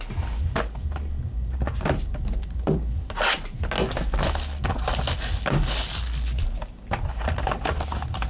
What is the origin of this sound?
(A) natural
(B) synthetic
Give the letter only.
A